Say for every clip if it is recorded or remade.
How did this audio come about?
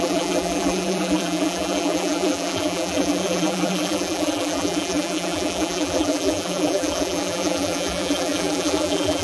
remade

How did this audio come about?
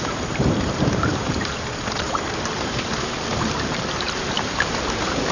remade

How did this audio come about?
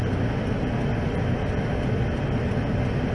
recorded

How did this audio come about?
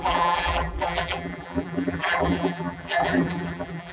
remade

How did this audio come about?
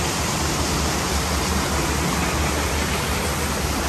recorded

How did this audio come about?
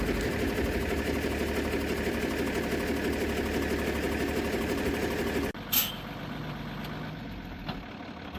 recorded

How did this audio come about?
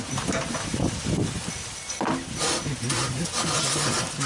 recorded